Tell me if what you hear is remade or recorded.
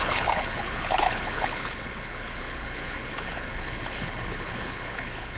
remade